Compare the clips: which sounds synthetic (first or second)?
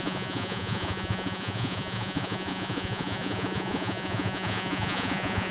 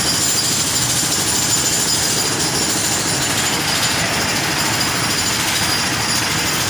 first